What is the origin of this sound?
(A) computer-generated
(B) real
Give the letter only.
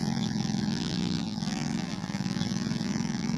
A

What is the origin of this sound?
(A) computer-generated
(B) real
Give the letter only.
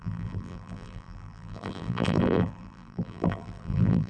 A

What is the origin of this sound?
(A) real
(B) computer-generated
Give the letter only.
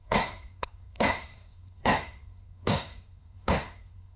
B